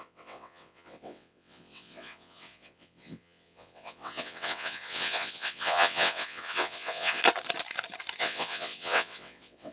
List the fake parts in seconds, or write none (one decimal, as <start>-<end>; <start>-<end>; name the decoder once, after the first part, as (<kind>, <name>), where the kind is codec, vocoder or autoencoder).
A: 0.0-7.2 (vocoder, WaveNeXt); 8.2-9.7